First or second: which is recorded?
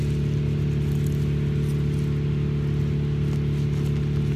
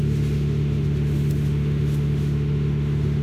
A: first